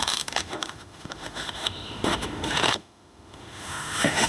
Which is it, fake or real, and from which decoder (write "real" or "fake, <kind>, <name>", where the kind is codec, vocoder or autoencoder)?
fake, autoencoder, DAC-VAE